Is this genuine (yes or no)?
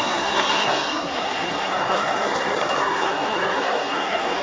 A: no